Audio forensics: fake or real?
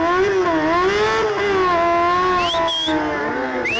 real